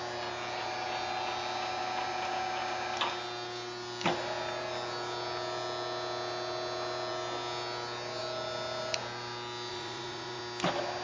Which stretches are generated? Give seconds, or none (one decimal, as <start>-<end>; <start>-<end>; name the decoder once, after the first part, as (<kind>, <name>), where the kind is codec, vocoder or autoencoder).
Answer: 9.7-10.4 (vocoder, Vocos)